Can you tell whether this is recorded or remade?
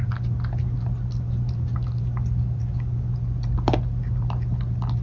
recorded